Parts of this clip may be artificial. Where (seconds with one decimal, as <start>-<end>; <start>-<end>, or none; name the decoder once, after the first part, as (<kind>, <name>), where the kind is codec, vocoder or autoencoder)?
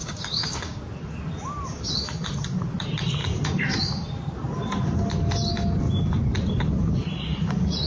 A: 0.0-0.8 (codec, DAC)